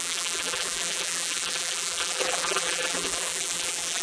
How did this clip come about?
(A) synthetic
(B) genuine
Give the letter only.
A